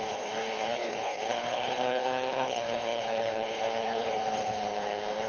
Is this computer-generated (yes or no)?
yes